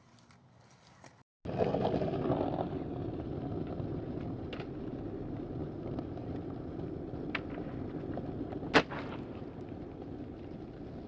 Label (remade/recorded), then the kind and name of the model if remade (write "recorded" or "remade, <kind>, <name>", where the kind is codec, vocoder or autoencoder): recorded